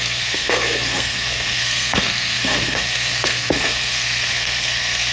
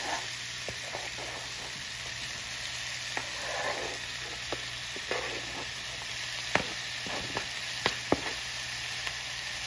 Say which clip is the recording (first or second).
second